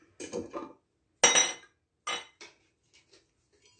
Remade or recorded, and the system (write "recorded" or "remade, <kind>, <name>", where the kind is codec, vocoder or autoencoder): recorded